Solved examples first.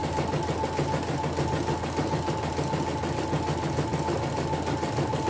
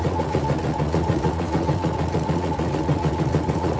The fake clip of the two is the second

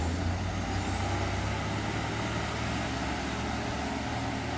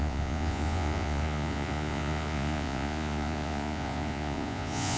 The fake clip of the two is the second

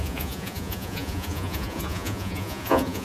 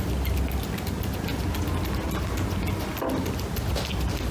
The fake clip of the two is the first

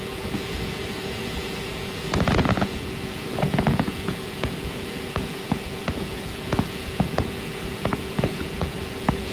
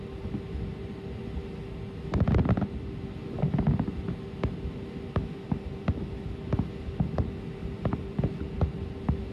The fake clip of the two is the first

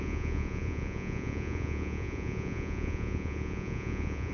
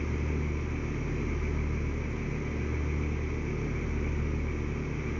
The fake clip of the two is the first